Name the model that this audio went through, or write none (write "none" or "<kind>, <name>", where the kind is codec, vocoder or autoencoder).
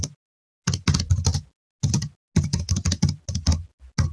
none